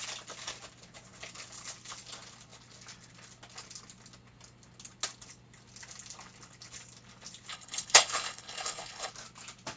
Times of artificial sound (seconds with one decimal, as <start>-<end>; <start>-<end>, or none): 7.5-9.1